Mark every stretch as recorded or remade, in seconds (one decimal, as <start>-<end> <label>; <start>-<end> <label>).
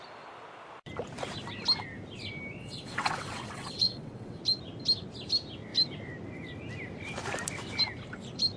0.0-2.6 recorded; 2.6-4.4 remade; 4.4-8.6 recorded